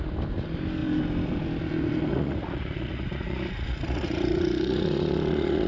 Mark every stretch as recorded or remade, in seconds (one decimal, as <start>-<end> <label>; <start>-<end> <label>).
0.0-2.1 recorded; 2.1-5.7 remade